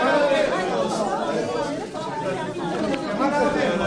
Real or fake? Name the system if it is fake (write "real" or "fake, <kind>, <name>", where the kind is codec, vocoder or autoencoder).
real